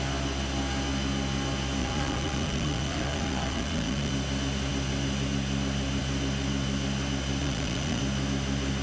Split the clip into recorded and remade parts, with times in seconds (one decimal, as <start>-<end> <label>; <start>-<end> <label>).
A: 0.0-1.8 recorded; 1.8-4.1 remade; 4.1-7.4 recorded; 7.4-8.0 remade; 8.0-8.8 recorded